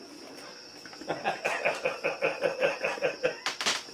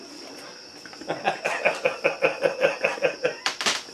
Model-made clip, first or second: second